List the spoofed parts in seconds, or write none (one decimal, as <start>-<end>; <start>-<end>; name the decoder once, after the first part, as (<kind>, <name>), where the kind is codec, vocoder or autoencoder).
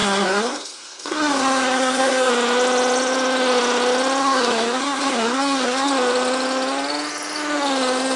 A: 0.0-2.3 (codec, SNAC); 4.2-5.9